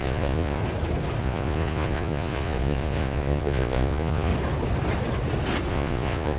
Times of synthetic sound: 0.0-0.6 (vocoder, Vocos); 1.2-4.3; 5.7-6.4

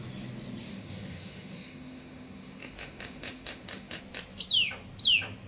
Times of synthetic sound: 0.7-4.0 (autoencoder, DAC-VAE)

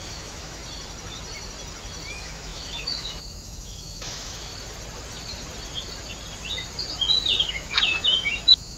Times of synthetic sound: 0.0-0.6 (autoencoder, DAC-VAE); 2.1-4.5; 7.5-8.8

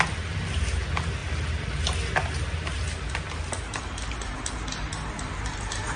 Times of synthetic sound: none

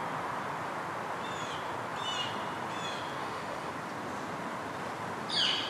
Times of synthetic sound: 3.2-3.7 (autoencoder, DAC-VAE)

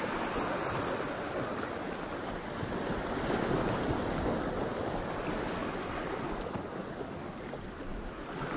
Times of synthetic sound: none

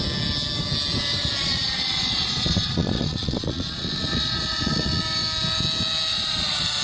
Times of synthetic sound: 1.4-5.0 (vocoder, Vocos); 6.1-6.8

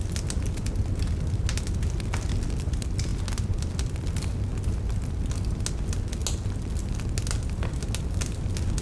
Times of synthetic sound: none